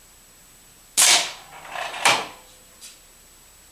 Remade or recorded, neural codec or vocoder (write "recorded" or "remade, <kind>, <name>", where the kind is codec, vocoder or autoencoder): recorded